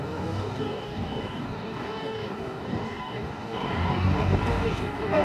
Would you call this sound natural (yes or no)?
no